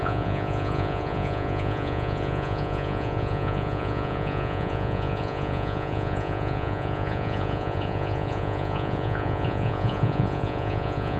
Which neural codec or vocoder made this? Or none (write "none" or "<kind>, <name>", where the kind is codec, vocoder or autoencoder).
vocoder, Vocos